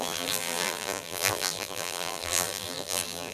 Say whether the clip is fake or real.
fake